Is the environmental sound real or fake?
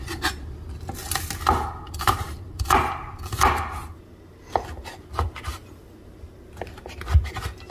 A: real